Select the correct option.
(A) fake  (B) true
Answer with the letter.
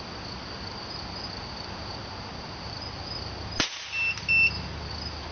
B